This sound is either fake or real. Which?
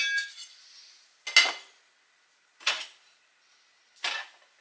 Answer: real